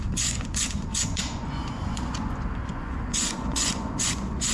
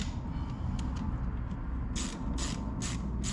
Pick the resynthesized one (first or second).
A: first